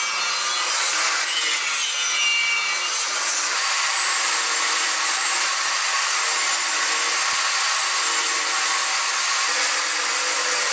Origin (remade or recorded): recorded